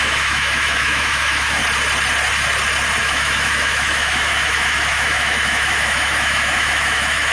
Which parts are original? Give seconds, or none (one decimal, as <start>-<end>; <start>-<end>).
1.6-3.0